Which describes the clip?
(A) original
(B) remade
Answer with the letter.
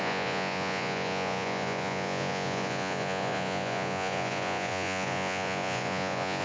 B